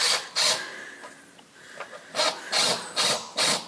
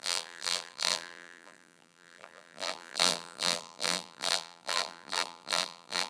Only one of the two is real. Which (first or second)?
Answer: first